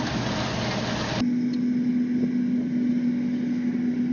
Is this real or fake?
real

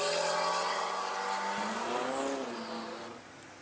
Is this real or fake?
real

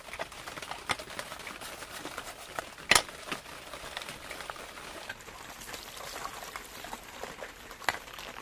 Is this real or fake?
real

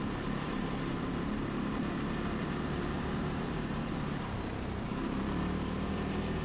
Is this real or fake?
fake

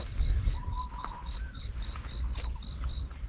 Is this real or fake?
real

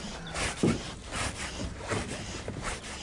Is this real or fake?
fake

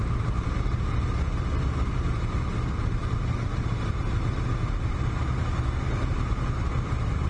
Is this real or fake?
fake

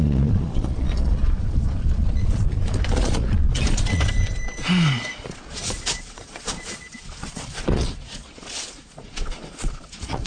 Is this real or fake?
fake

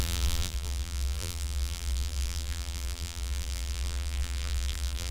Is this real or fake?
fake